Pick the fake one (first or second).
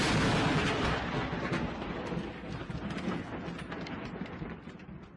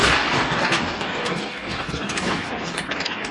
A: second